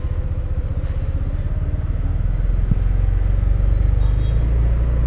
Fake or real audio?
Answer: real